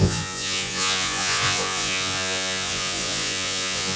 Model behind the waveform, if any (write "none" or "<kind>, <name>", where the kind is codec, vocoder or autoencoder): vocoder, Vocos